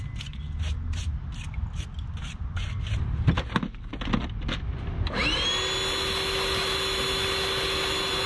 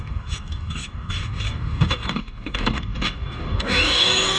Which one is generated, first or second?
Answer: second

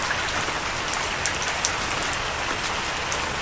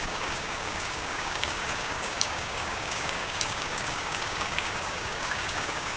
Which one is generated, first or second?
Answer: second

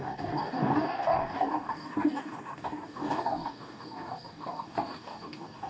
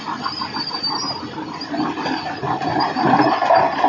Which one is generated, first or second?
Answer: first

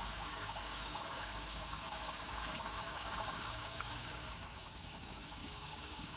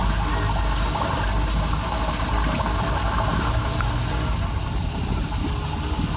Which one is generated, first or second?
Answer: first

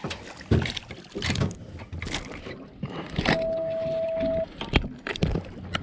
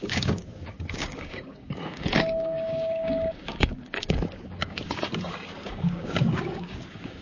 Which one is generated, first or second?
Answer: second